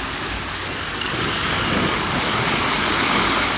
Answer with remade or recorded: remade